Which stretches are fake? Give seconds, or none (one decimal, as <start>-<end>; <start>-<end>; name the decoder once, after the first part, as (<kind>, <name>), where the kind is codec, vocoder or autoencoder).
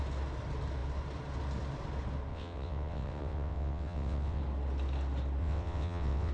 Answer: 2.3-4.4 (vocoder, WaveNeXt); 5.4-6.3